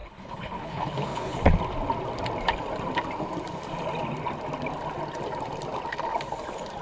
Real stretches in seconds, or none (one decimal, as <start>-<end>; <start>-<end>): 1.4-6.8